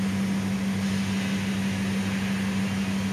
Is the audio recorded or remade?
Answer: recorded